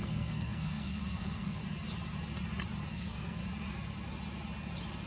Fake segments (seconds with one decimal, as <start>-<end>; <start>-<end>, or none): 0.0-1.6; 2.9-3.4